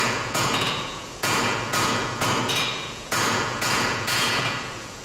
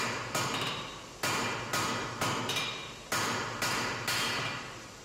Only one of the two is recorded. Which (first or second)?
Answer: second